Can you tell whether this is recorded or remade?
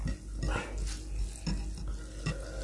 recorded